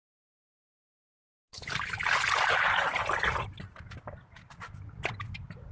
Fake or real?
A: real